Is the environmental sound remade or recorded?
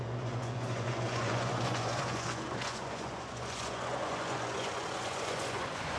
remade